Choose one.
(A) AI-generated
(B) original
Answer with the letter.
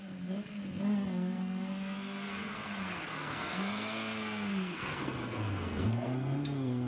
A